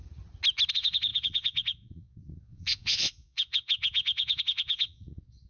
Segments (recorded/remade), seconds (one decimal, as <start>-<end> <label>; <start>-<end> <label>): 0.0-0.7 recorded; 0.7-5.5 remade